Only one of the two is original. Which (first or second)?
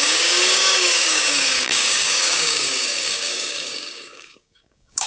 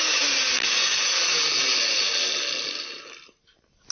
second